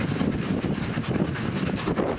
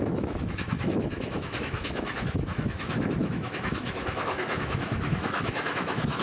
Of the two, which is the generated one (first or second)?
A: second